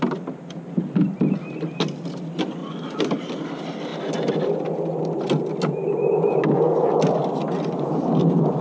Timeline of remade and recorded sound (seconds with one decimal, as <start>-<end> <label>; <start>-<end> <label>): 0.0-8.6 recorded